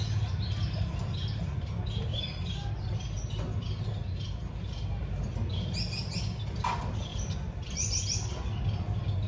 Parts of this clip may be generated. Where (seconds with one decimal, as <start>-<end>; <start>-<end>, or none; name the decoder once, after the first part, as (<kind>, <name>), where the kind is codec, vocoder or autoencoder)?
2.1-2.7 (vocoder, BigVGAN v2); 7.1-8.0